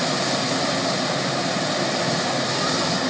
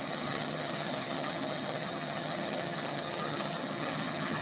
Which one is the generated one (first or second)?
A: second